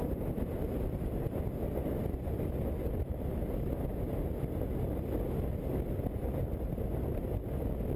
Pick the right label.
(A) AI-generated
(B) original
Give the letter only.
B